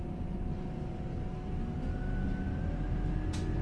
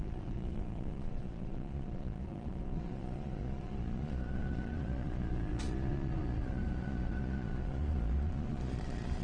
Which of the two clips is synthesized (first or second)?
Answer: second